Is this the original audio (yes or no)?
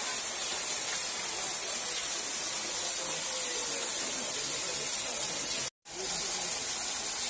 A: yes